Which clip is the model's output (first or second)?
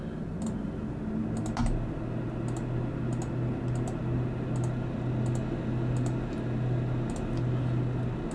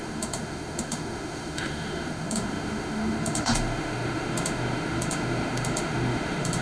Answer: second